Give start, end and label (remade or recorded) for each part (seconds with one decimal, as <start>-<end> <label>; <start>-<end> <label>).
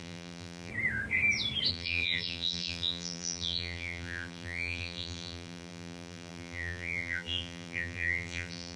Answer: 0.0-0.7 remade; 0.7-1.7 recorded; 1.7-8.8 remade